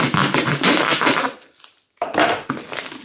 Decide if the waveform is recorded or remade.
recorded